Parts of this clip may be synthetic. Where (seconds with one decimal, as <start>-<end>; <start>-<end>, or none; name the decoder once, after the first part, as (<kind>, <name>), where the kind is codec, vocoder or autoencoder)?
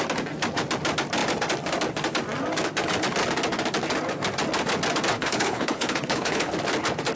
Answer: 5.1-6.5 (codec, HILCodec)